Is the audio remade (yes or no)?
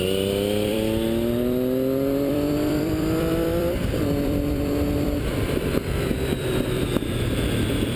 yes